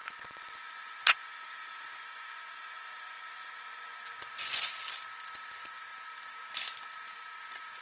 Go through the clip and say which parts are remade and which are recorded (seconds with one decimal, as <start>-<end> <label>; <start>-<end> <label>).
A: 0.0-4.7 remade; 4.7-7.8 recorded